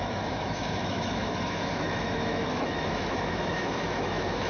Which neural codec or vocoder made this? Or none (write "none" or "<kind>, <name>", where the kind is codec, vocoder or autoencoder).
autoencoder, DAC-VAE